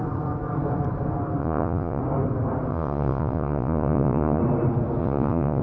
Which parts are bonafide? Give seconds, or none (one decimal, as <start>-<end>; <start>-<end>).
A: 0.0-1.4; 2.0-2.7; 4.4-5.0